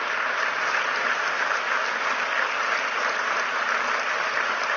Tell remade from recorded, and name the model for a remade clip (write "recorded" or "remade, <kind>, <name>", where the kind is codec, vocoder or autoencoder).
recorded